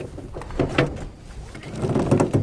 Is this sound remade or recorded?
recorded